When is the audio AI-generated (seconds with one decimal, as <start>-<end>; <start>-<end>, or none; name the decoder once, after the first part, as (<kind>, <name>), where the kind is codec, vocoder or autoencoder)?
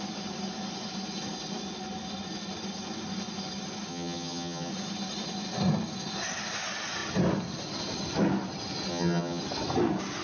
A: 3.9-4.7 (vocoder, HiFi-GAN); 8.9-9.4